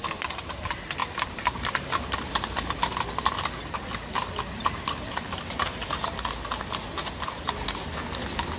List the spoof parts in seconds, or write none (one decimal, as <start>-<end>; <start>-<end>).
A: 1.0-3.0; 5.1-6.1